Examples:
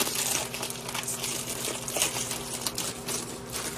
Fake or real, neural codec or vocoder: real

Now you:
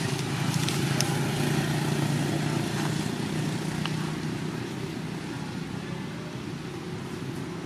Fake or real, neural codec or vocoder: real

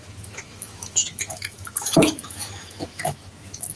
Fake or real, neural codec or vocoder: fake, autoencoder, DAC-VAE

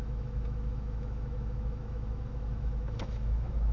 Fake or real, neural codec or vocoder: fake, autoencoder, DAC-VAE